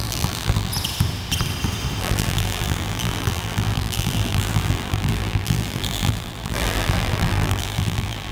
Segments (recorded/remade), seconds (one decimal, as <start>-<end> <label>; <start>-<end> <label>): 0.0-0.7 remade; 0.7-2.0 recorded; 2.0-8.3 remade